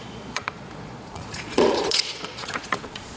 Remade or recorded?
remade